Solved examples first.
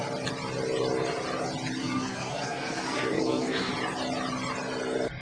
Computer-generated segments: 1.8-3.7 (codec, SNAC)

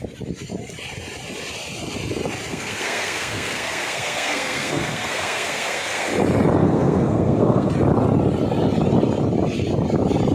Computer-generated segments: 2.5-6.1 (codec, SNAC); 6.6-7.7